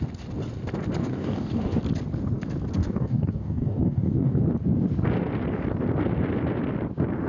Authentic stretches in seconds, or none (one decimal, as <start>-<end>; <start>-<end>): 0.0-1.0; 1.8-2.8; 4.4-7.3